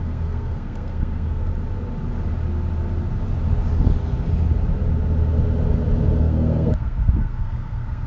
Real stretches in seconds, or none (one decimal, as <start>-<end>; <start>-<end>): 1.5-6.2